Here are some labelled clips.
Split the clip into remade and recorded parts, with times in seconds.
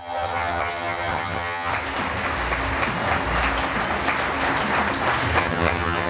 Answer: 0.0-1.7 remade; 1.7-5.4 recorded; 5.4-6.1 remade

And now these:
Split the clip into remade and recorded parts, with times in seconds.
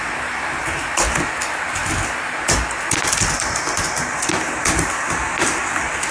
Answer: 0.0-6.1 recorded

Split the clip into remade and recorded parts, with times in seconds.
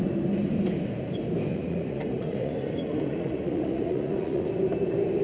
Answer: 0.0-1.5 recorded; 1.5-4.5 remade; 4.5-5.2 recorded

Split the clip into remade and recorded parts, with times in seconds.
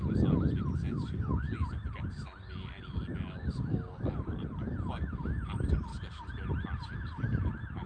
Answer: 0.0-7.9 recorded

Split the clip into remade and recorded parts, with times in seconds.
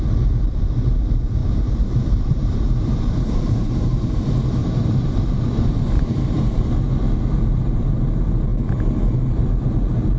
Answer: 0.0-1.4 recorded; 1.4-4.1 remade; 4.1-4.6 recorded; 4.6-6.7 remade; 6.7-10.2 recorded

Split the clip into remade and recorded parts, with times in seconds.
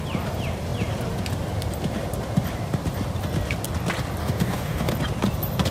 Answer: 0.0-4.2 recorded; 4.2-4.9 remade; 4.9-5.7 recorded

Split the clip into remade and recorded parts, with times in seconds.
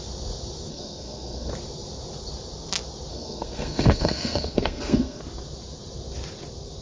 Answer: 0.0-0.7 recorded; 0.7-1.5 remade; 1.5-3.1 recorded; 3.1-5.2 remade; 5.2-6.8 recorded